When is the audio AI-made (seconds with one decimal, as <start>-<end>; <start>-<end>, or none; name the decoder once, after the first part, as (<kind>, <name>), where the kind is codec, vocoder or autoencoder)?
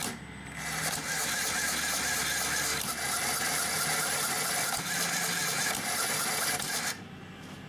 none